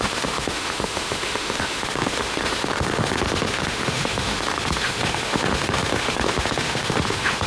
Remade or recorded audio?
remade